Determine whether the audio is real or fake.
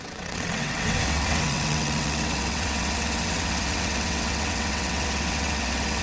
fake